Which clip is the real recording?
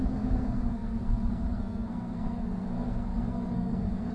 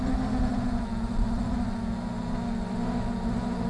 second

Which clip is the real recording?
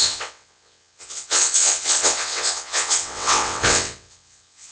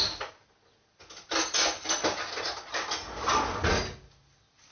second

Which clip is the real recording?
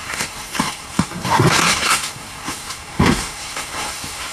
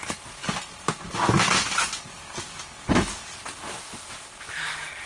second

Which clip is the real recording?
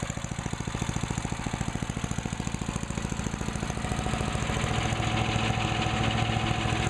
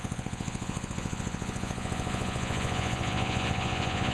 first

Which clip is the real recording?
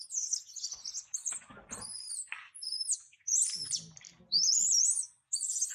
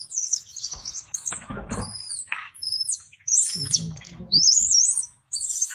first